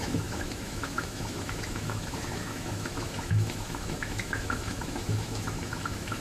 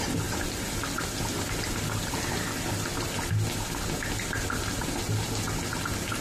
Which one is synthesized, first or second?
first